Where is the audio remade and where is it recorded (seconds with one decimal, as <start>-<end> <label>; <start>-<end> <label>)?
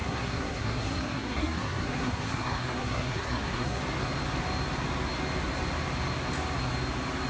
0.0-3.8 remade; 3.8-7.3 recorded